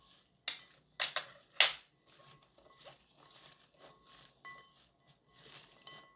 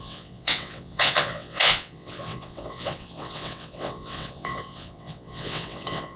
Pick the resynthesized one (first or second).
second